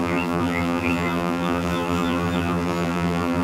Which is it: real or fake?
fake